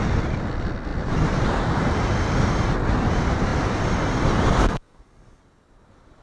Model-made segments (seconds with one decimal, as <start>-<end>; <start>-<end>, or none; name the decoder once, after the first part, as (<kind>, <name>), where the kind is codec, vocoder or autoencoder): 4.6-5.4 (codec, SNAC)